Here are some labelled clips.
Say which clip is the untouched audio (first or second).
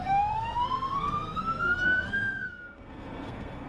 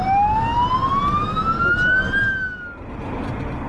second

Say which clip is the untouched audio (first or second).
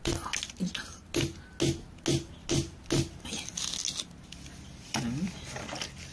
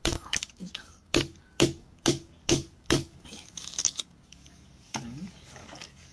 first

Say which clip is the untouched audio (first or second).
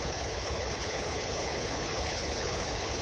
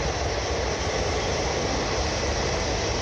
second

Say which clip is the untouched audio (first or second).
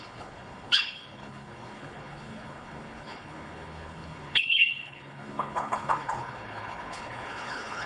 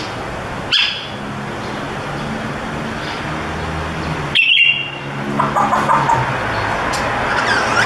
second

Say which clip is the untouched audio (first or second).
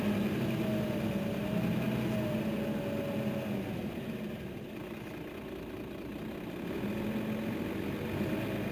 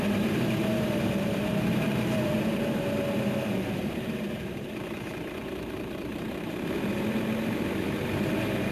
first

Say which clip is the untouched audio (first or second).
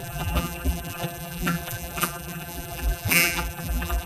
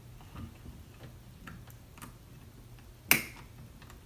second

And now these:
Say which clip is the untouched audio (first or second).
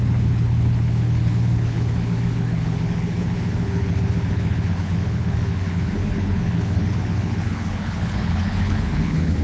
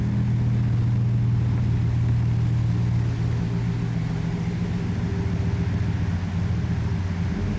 second